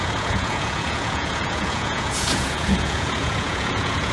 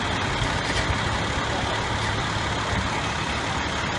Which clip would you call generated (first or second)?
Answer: first